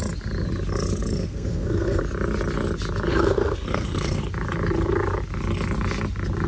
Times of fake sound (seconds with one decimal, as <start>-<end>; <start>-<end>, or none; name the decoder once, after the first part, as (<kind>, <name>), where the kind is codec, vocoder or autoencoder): 1.2-2.0 (codec, SNAC); 3.1-4.2